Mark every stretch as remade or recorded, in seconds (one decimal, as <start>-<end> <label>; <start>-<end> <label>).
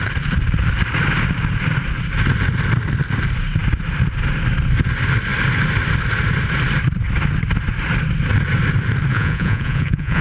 0.0-9.1 recorded; 9.1-10.2 remade